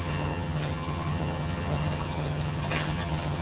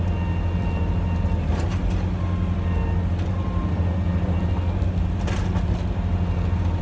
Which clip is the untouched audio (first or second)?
second